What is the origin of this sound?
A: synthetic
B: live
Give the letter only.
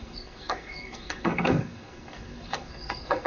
A